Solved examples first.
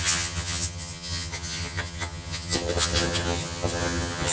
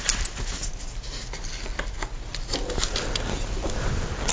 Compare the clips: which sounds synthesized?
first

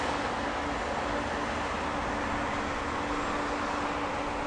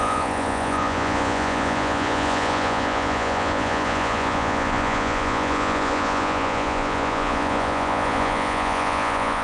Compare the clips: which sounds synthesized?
second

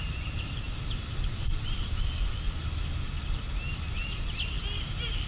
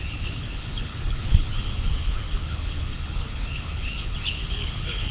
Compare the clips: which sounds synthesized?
second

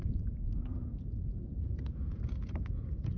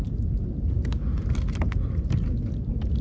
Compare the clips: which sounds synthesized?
first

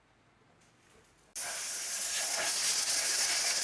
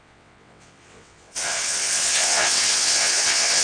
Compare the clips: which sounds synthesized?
second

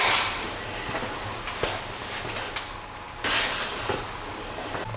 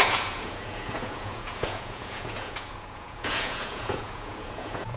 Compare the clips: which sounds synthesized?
second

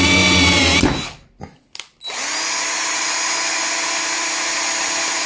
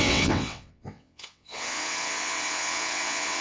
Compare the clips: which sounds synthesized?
second